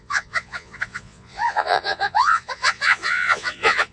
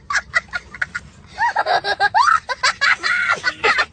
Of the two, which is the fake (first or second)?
first